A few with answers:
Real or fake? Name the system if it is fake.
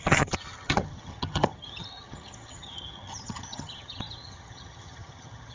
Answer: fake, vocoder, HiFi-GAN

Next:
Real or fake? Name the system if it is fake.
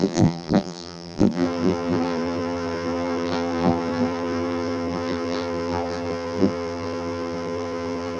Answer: fake, vocoder, BigVGAN v2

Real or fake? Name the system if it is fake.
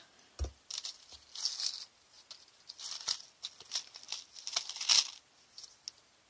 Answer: real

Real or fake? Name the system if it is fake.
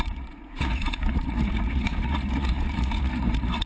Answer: fake, vocoder, Vocos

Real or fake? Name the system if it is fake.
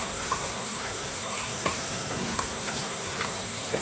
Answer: fake, codec, SNAC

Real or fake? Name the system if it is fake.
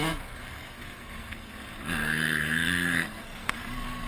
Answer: fake, codec, SNAC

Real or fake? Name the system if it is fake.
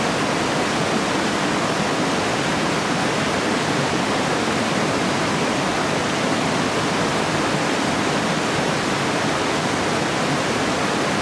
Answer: real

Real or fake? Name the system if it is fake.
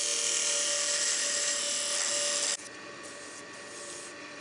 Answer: real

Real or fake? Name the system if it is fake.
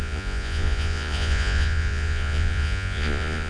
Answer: fake, vocoder, Vocos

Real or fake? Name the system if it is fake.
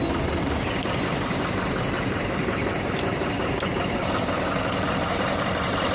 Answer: fake, vocoder, BigVGAN v2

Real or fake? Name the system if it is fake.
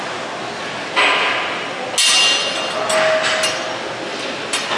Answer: real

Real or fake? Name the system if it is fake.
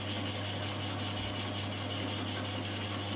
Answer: real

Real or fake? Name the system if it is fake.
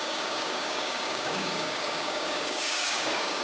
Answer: fake, codec, DAC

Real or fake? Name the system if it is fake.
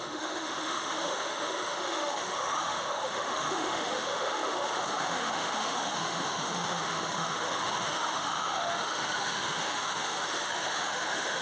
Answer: fake, autoencoder, DAC-VAE